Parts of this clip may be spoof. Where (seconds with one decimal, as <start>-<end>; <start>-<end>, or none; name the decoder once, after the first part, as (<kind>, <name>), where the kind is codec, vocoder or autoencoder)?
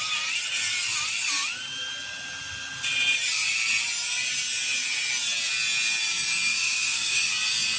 6.5-7.3 (codec, DAC)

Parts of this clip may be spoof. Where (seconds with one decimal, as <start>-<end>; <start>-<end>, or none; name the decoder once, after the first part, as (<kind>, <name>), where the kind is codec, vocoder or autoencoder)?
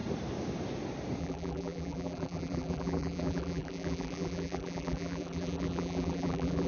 1.2-6.7 (vocoder, BigVGAN v2)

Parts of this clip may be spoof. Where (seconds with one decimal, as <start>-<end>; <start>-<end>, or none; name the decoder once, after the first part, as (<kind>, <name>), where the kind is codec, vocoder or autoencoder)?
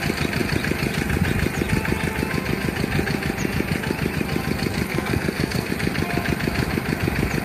4.9-5.7 (codec, SNAC)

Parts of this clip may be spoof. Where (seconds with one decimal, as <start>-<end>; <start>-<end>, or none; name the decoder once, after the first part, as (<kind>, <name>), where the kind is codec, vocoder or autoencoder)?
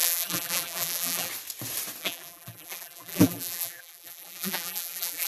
0.0-1.3 (vocoder, BigVGAN v2); 2.0-5.3